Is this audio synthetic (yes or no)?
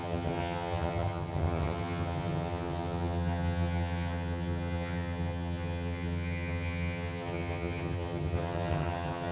yes